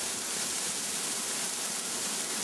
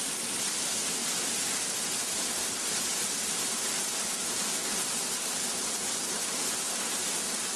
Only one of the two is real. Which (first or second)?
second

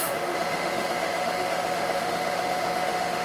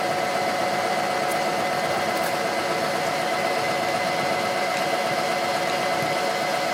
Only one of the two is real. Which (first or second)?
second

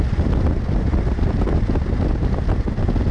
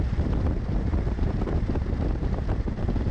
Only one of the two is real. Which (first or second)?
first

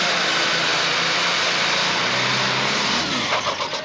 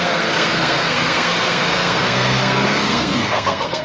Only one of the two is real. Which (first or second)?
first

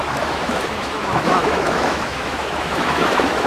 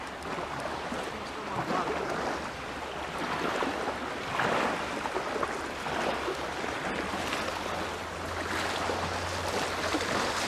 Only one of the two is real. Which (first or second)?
second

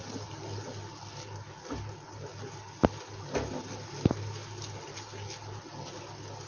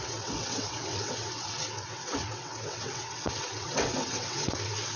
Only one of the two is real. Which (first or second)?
first